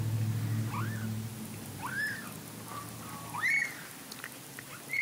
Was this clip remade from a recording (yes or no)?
no